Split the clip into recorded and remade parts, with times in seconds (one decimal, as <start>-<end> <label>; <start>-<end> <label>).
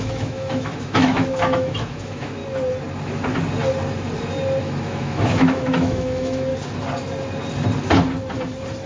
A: 0.0-2.4 remade; 2.4-4.6 recorded; 4.6-6.5 remade; 6.5-8.9 recorded